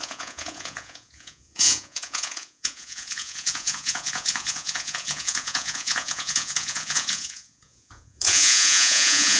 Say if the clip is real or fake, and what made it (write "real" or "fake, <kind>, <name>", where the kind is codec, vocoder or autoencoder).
fake, vocoder, Vocos